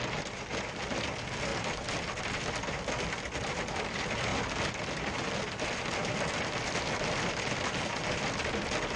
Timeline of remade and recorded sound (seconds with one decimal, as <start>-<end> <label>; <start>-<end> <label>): 0.0-9.0 recorded